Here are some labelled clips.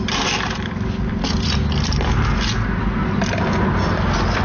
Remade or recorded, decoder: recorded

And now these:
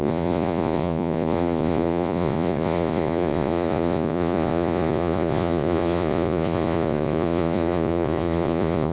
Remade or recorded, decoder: remade, vocoder, Vocos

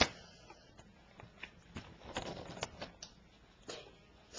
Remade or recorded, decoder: recorded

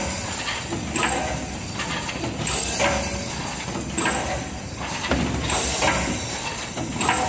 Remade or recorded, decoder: recorded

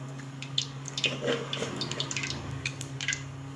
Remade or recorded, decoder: remade, codec, DAC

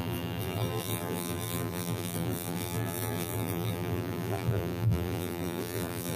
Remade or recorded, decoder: remade, vocoder, BigVGAN v2